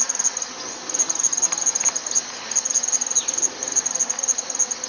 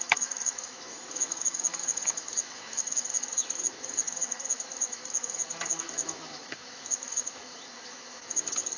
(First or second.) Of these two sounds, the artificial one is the second